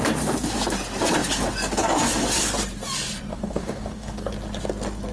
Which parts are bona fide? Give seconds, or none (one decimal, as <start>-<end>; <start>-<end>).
0.0-3.3; 4.3-5.1